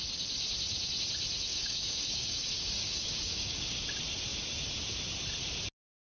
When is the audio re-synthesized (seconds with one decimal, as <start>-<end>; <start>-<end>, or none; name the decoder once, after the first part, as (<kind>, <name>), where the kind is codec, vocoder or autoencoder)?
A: 1.5-3.8 (codec, DAC)